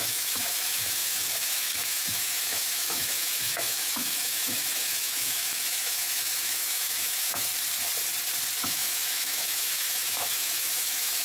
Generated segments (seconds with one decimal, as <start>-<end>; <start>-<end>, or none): 0.0-7.5; 8.6-11.2